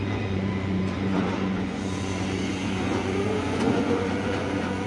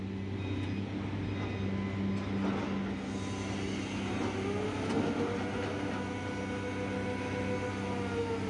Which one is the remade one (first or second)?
first